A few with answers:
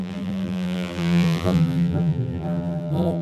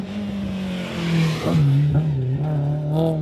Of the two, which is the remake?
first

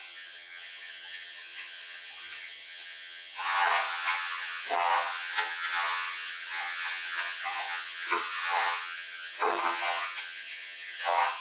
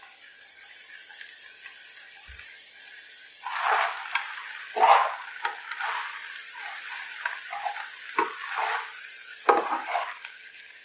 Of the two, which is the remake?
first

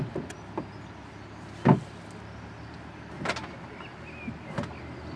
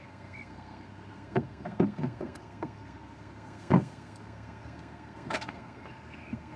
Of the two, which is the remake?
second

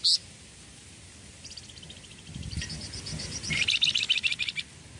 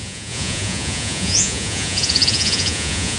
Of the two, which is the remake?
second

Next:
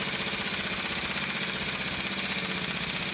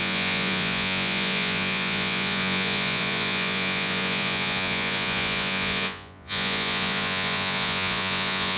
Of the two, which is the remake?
second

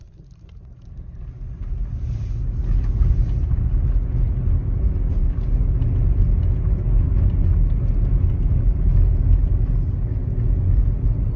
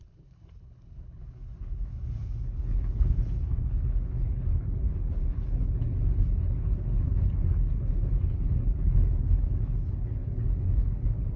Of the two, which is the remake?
second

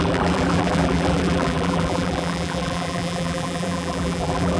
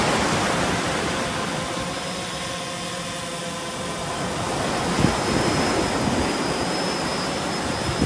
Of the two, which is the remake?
first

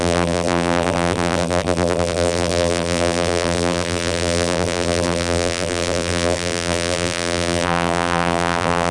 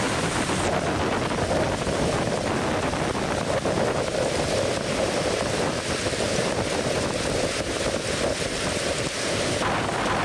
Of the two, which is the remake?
first